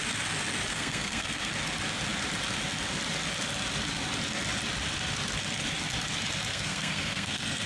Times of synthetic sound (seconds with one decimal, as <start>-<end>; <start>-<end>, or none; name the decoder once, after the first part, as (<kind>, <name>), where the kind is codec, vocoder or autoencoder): 0.7-1.5 (codec, SNAC); 6.5-7.7